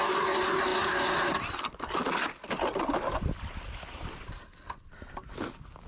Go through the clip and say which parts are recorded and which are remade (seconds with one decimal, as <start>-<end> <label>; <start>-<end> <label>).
0.0-5.9 recorded